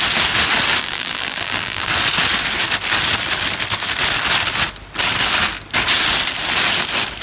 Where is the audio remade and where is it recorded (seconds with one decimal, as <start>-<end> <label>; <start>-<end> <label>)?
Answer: 0.0-0.8 recorded; 0.8-1.9 remade; 1.9-7.2 recorded